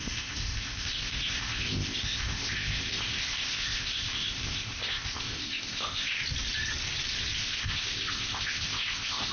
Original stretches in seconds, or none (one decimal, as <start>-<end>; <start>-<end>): 6.2-7.4